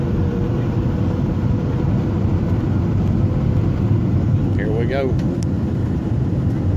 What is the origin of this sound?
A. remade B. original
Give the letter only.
A